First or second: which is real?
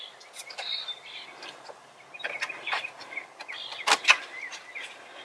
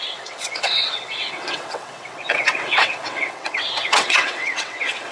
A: first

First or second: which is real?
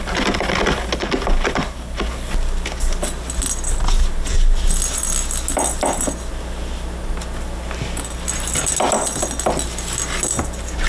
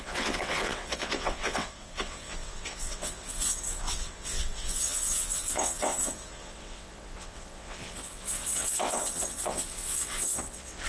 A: first